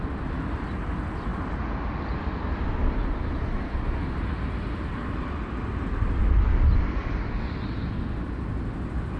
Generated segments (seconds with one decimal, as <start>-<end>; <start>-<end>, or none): none